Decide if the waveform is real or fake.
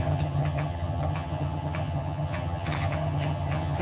fake